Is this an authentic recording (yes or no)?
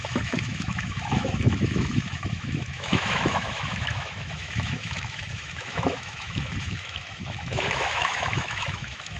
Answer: no